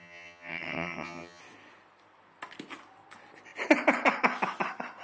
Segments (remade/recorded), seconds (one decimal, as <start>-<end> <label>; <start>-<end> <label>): 0.0-1.4 remade; 1.4-5.0 recorded